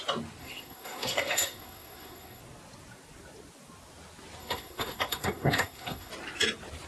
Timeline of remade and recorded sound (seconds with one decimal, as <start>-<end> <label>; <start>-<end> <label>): 0.0-0.4 recorded; 0.4-2.4 remade; 2.4-4.4 recorded; 4.4-6.1 remade; 6.1-6.9 recorded